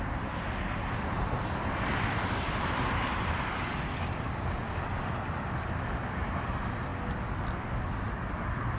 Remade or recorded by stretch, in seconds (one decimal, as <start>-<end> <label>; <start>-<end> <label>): 0.0-8.8 recorded